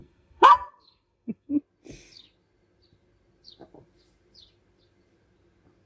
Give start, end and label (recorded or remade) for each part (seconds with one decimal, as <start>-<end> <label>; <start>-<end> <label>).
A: 0.0-1.5 remade; 1.5-5.9 recorded